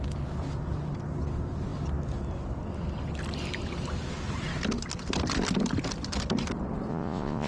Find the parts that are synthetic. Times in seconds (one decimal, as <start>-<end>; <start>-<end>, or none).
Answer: 6.9-7.5